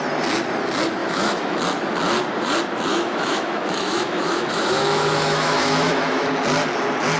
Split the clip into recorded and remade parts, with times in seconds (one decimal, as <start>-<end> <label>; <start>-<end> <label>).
0.0-1.0 recorded; 1.0-1.6 remade; 1.6-2.9 recorded; 2.9-6.3 remade; 6.3-7.2 recorded